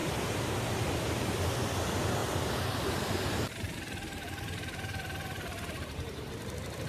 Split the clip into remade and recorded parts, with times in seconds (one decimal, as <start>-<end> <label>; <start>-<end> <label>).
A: 0.0-0.7 remade; 0.7-2.2 recorded; 2.2-6.3 remade; 6.3-6.9 recorded